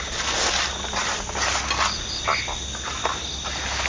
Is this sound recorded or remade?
recorded